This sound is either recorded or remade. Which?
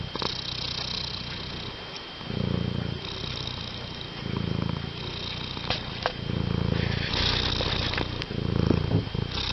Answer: recorded